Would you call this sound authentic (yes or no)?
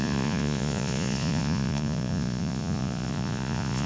no